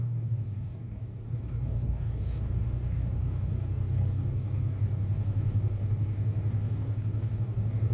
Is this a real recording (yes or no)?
no